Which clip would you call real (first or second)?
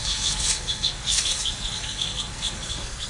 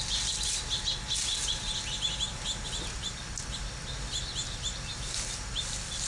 second